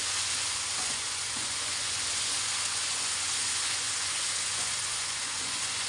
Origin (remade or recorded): remade